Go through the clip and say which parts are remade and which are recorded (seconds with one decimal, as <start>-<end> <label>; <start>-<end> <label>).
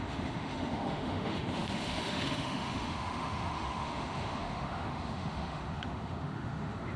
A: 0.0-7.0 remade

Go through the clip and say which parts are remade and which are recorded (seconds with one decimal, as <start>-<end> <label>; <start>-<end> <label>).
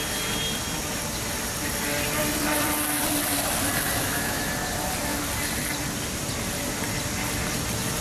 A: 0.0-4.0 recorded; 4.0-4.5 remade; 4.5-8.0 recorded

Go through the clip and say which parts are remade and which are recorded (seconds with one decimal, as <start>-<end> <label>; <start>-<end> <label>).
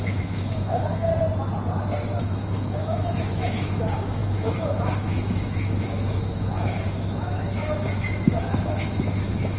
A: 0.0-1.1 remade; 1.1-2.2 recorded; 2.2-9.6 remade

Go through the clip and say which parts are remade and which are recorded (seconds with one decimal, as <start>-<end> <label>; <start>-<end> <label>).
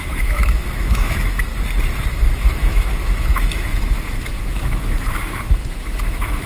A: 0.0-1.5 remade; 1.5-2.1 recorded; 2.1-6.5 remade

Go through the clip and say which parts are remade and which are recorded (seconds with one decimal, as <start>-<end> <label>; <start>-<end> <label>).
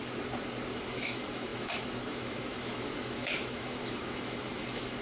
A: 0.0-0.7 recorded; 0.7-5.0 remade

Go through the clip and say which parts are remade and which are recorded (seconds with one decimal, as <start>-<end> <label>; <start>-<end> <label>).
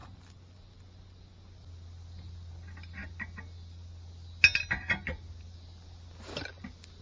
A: 0.0-7.0 recorded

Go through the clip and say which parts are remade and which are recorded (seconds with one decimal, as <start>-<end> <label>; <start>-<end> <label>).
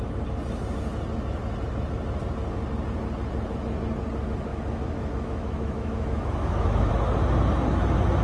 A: 0.0-4.5 recorded; 4.5-6.9 remade; 6.9-8.2 recorded